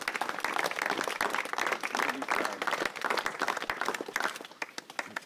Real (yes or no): yes